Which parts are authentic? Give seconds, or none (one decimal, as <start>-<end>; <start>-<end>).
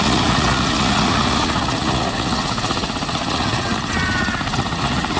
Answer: none